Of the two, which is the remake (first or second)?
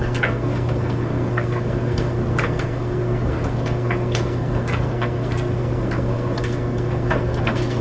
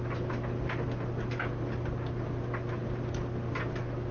first